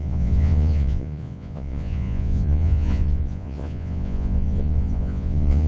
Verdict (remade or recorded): remade